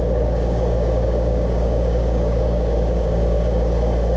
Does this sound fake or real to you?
fake